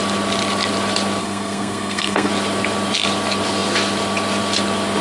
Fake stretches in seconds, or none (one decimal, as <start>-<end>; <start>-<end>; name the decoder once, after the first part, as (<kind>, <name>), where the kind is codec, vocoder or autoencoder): 1.2-2.3 (codec, SNAC)